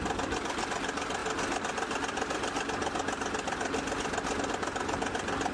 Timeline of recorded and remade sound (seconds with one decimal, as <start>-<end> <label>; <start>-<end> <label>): 0.0-5.5 recorded